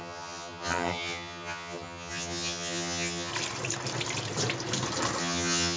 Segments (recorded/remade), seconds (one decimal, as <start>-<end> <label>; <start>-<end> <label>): 0.0-3.3 remade; 3.3-5.2 recorded; 5.2-5.8 remade